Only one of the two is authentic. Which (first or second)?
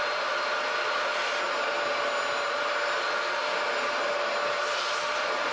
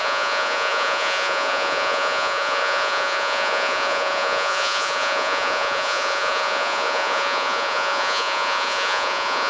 first